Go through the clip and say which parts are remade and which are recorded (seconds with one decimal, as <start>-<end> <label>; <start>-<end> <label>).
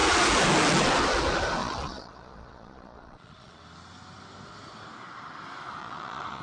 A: 0.0-1.6 recorded; 1.6-3.6 remade; 3.6-5.8 recorded; 5.8-6.4 remade